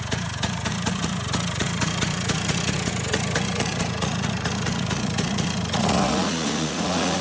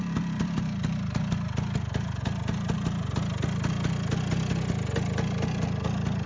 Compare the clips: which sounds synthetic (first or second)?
first